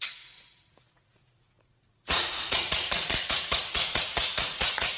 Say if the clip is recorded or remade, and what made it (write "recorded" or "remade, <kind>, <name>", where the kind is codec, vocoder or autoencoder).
remade, vocoder, Vocos